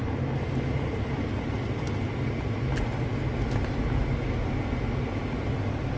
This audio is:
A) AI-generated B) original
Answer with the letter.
B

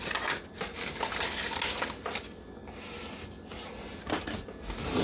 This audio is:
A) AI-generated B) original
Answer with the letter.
B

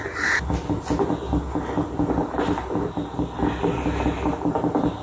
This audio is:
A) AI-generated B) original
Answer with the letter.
B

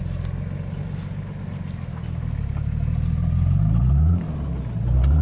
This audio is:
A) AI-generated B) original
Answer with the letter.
B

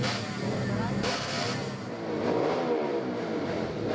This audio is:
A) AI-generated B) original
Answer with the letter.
B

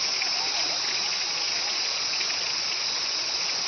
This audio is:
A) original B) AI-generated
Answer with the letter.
B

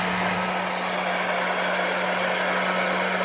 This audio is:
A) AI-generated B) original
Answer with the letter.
B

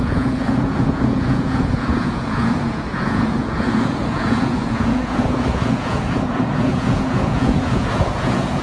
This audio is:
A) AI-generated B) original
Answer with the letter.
A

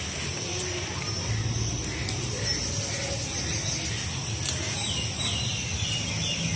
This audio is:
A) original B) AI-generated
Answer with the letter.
A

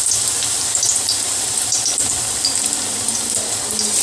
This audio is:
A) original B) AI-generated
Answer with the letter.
A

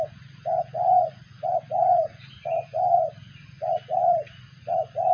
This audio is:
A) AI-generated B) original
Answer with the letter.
A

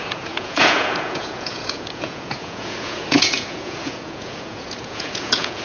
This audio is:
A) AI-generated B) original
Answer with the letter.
A